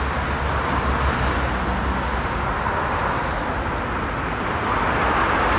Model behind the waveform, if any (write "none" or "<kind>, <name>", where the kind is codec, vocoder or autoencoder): none